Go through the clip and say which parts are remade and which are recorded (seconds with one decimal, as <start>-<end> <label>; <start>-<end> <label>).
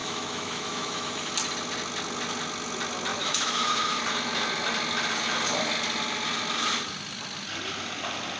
0.0-1.3 remade; 1.3-3.1 recorded; 3.1-4.0 remade; 4.0-8.4 recorded